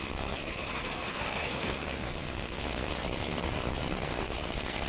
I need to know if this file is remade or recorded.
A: remade